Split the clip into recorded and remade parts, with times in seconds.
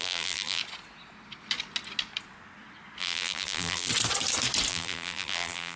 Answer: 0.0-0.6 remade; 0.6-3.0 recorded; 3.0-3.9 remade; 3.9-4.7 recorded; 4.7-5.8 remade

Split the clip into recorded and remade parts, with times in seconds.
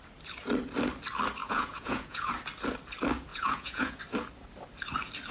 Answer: 0.0-1.4 recorded; 1.4-2.3 remade; 2.3-3.3 recorded; 3.3-4.0 remade; 4.0-5.3 recorded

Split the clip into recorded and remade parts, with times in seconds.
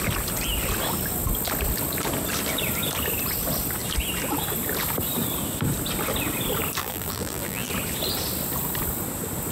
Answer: 0.0-6.8 recorded; 6.8-7.7 remade; 7.7-9.5 recorded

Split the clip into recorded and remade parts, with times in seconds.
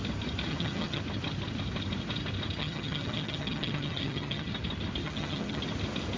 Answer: 0.0-0.5 recorded; 0.5-1.0 remade; 1.0-2.6 recorded; 2.6-4.5 remade; 4.5-5.0 recorded; 5.0-5.6 remade; 5.6-6.2 recorded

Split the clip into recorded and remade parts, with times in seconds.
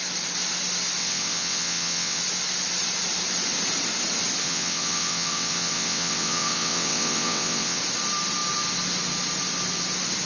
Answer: 0.0-1.0 recorded; 1.0-2.2 remade; 2.2-4.4 recorded; 4.4-7.8 remade; 7.8-10.3 recorded